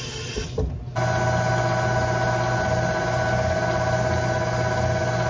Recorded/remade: recorded